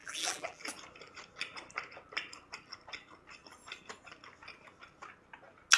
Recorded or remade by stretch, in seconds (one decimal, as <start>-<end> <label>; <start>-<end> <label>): 0.0-0.6 remade; 0.6-5.8 recorded